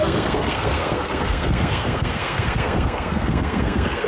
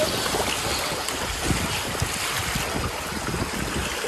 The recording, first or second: second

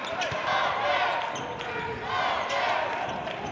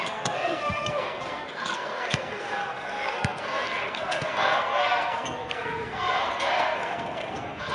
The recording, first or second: first